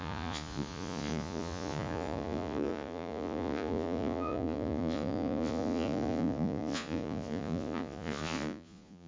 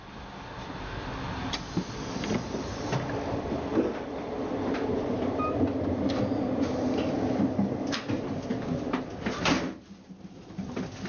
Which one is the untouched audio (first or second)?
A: second